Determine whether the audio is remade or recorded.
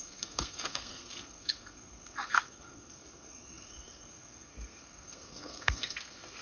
remade